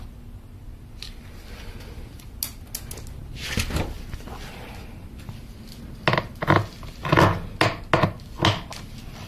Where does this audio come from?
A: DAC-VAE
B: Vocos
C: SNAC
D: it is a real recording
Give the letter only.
D